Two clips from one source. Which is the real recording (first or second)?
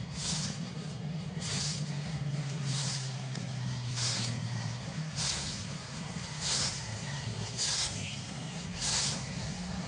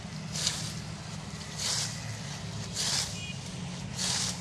second